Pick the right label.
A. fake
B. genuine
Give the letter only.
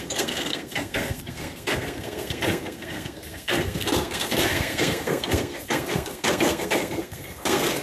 A